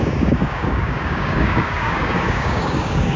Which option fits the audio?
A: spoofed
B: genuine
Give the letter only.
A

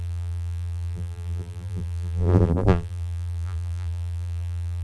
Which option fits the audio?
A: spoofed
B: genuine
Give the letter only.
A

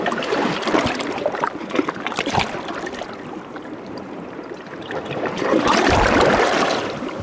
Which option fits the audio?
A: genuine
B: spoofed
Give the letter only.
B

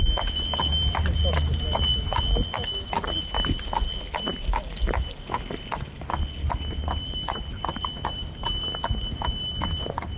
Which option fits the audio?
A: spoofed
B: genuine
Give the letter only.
B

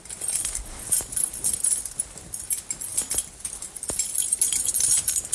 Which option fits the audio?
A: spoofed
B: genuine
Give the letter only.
B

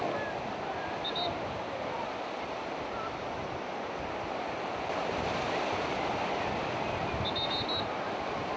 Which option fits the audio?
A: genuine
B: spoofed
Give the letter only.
A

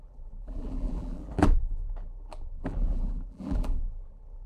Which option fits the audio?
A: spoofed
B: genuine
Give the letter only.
A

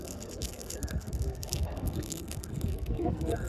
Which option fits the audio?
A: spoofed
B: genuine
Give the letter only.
A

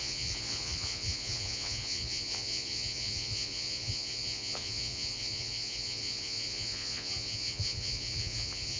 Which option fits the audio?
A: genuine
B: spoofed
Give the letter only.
B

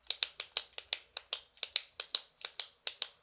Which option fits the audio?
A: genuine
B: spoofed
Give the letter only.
A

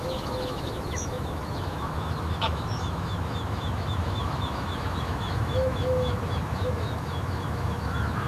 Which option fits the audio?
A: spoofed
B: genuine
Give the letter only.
A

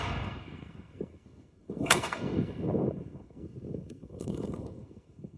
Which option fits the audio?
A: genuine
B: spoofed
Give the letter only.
B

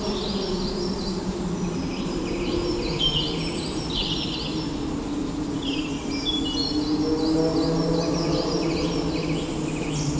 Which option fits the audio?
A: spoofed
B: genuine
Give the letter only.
B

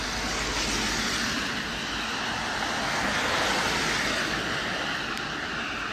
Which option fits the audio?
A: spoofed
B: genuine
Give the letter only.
B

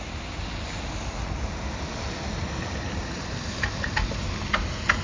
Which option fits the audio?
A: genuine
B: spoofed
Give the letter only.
A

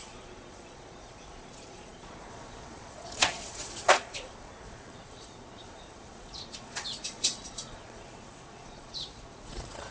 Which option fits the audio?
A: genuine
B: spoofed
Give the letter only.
B